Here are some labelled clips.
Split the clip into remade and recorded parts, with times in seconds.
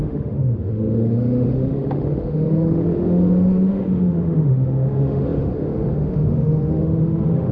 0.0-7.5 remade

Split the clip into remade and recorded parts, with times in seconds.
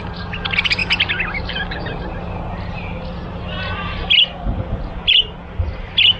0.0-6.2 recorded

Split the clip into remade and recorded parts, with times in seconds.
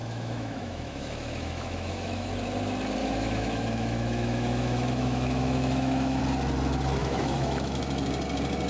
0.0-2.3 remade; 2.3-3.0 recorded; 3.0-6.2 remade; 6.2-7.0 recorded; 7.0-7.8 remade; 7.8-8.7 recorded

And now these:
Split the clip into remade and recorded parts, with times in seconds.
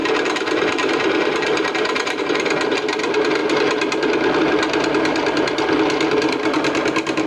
0.0-2.2 remade; 2.2-7.3 recorded